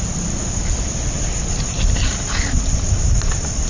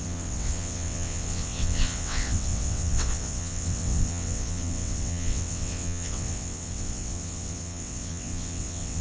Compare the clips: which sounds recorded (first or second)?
first